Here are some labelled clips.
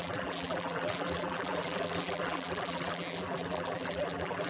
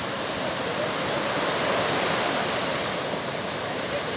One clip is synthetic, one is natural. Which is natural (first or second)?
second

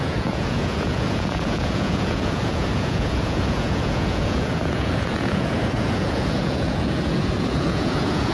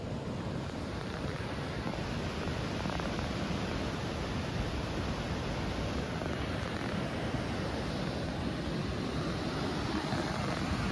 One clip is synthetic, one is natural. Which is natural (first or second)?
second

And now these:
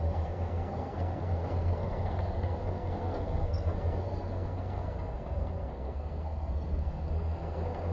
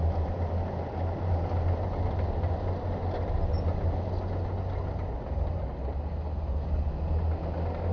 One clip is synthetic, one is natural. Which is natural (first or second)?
second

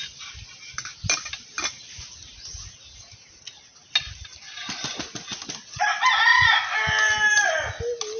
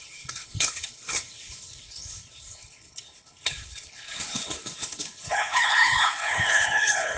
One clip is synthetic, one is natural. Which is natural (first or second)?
first